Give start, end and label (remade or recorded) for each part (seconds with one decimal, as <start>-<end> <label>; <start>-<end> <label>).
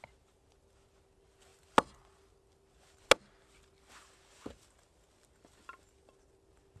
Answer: 0.0-6.8 recorded